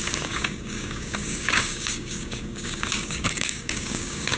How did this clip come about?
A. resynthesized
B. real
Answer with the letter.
A